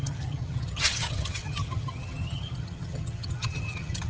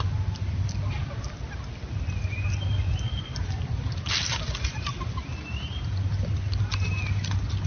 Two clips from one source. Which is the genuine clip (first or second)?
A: second